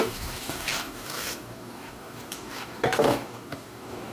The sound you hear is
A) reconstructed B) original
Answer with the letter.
A